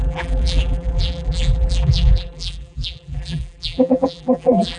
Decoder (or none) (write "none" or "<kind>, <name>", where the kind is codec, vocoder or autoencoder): vocoder, BigVGAN v2